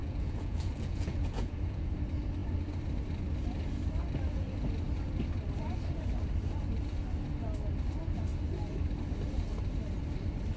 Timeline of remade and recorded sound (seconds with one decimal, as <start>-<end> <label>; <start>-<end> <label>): 0.0-1.9 remade; 1.9-10.6 recorded